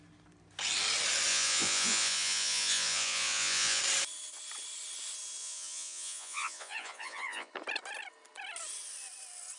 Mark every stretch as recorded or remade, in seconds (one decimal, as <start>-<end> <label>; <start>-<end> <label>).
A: 0.0-1.3 recorded; 1.3-3.8 remade; 3.8-5.4 recorded; 5.4-7.5 remade; 7.5-9.6 recorded